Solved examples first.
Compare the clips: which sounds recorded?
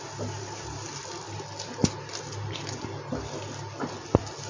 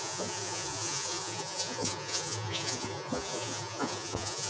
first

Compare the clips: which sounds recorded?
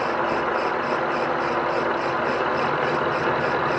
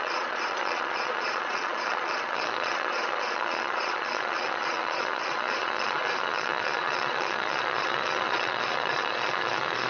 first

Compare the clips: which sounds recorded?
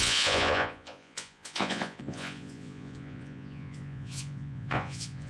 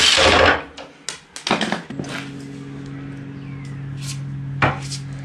second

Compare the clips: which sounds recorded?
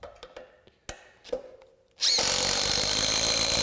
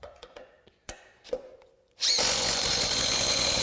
first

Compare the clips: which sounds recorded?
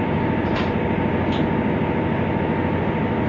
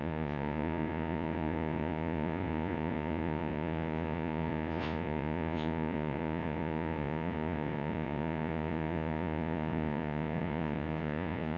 first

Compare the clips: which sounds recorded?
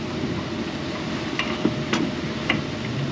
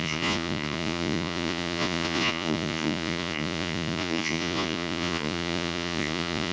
first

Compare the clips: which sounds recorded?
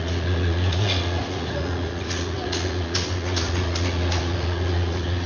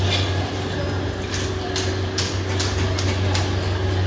second